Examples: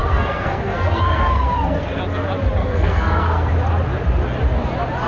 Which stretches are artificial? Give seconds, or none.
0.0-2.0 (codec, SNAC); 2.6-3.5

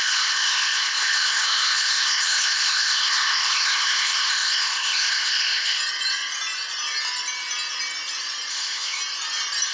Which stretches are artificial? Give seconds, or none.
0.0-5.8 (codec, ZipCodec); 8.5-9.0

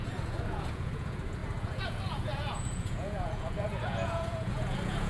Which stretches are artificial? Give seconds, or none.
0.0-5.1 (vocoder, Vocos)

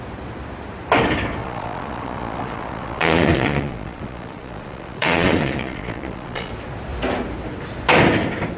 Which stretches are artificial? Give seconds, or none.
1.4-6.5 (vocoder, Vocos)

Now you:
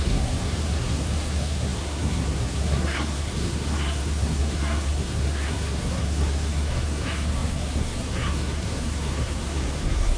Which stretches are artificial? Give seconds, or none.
0.0-10.2 (codec, SNAC)

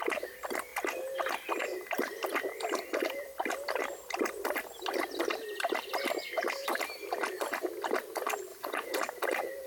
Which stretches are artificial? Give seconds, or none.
8.5-9.0 (vocoder, Vocos)

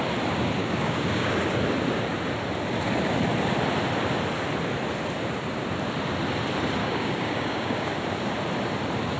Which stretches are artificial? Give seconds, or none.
0.6-1.3 (codec, DAC); 6.8-7.9